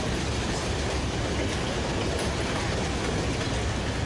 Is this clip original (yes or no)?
yes